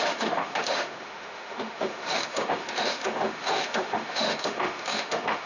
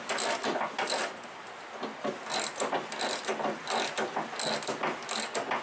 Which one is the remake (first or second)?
first